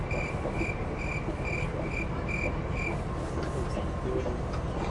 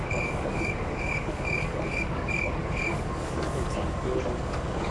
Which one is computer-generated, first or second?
second